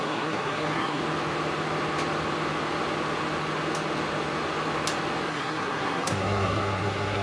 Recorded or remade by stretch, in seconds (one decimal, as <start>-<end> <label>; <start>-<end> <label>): 0.0-1.0 remade; 1.0-5.3 recorded; 5.3-7.2 remade